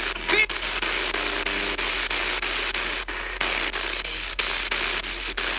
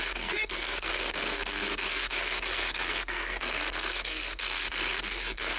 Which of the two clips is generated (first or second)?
second